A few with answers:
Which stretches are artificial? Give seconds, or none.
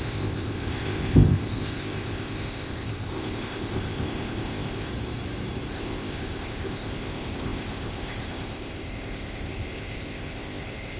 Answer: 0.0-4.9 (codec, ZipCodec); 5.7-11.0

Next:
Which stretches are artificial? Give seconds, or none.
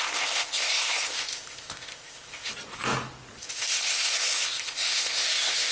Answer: 0.0-2.5 (codec, ZipCodec); 3.4-5.7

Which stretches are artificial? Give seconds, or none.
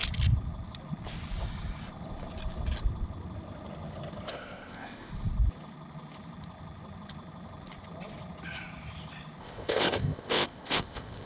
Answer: 4.3-5.1 (codec, ZipCodec); 9.4-11.3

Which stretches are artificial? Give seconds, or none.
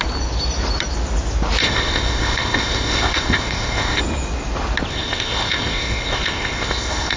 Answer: 1.6-4.0 (codec, ZipCodec); 4.9-7.2